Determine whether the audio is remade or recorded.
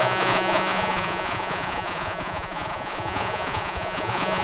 remade